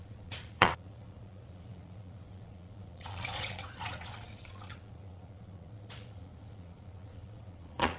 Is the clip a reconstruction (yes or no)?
yes